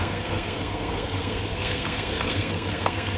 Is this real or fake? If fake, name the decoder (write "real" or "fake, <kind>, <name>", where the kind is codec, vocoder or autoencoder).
fake, codec, SNAC